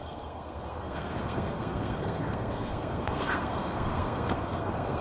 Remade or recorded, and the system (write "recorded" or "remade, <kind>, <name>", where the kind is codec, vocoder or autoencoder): remade, codec, SNAC